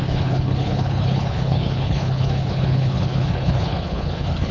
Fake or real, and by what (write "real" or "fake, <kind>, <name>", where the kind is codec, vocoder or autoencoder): fake, codec, HILCodec